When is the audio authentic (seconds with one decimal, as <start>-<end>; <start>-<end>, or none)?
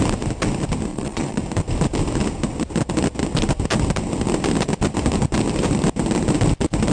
0.0-0.9; 1.4-6.9